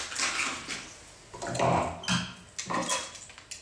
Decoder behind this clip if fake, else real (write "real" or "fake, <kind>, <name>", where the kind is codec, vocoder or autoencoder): real